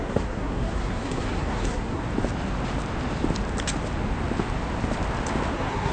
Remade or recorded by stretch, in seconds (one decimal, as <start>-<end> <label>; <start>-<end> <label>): 0.0-2.0 remade; 2.0-5.5 recorded; 5.5-5.9 remade